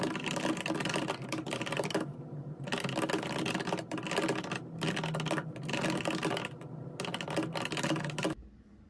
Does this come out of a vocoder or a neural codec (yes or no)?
no